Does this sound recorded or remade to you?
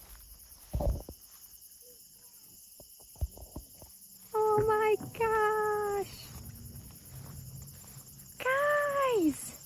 recorded